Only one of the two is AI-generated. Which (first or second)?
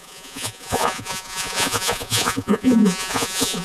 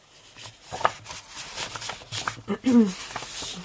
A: first